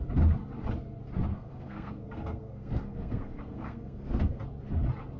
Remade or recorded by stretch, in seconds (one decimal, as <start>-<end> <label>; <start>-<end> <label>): 0.0-1.3 recorded; 1.3-4.4 remade; 4.4-5.2 recorded